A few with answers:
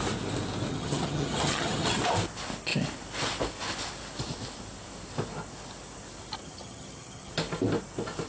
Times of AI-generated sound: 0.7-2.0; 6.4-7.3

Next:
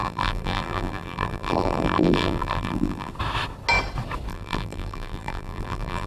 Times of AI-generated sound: 0.0-3.1; 4.3-6.1

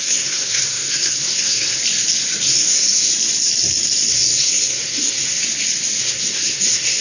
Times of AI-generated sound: 0.0-1.8; 2.4-3.1; 4.1-5.4; 6.0-7.0

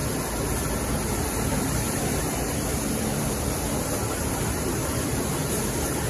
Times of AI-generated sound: 0.0-6.1

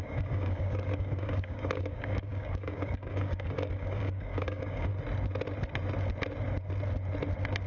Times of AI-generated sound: 0.0-4.9

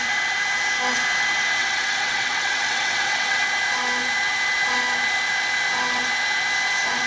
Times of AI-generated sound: 1.6-3.4